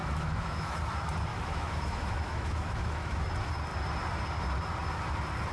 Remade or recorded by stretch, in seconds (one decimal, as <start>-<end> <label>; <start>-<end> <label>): 0.0-0.8 remade; 0.8-1.3 recorded; 1.3-3.2 remade; 3.2-5.5 recorded